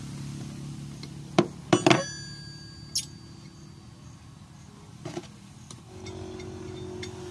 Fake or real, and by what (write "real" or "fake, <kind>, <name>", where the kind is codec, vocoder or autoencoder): real